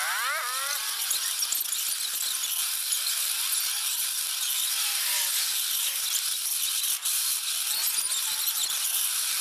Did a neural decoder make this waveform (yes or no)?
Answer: no